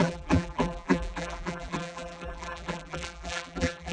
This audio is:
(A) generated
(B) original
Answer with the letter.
A